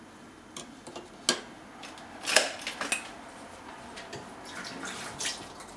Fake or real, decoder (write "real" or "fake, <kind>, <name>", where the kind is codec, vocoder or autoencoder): real